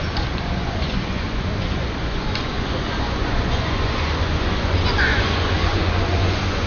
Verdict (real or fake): fake